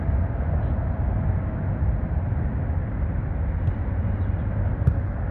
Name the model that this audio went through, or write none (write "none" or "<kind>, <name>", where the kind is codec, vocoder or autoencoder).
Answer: none